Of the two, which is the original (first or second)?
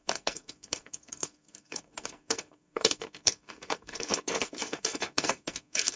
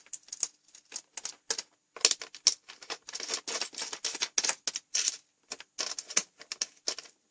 second